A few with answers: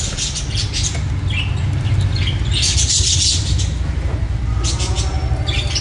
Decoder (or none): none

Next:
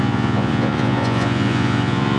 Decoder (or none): vocoder, Vocos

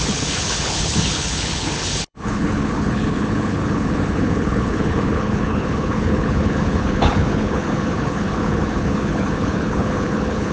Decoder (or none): codec, HILCodec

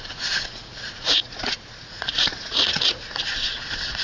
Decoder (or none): vocoder, Vocos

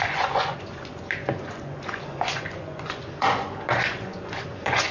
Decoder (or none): vocoder, Vocos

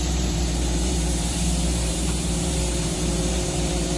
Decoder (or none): vocoder, BigVGAN v2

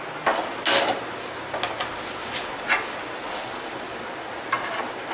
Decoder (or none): none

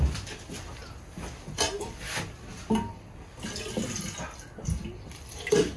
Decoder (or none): none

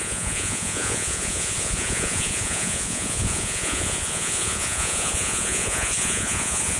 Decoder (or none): vocoder, Vocos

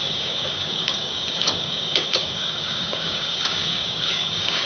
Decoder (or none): codec, DAC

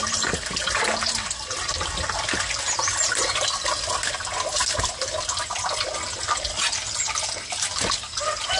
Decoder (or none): none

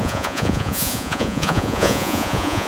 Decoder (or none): vocoder, Vocos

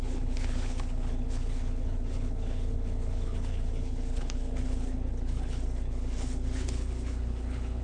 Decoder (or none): codec, HILCodec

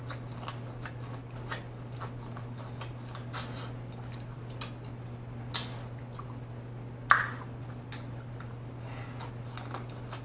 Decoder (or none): none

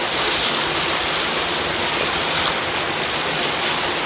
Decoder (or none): none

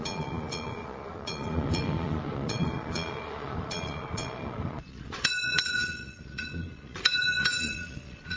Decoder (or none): vocoder, Vocos